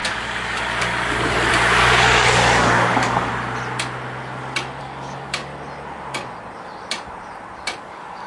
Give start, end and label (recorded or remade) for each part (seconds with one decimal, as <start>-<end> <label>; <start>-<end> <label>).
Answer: 0.0-3.3 remade; 3.3-4.8 recorded; 4.8-5.5 remade; 5.5-7.8 recorded; 7.8-8.3 remade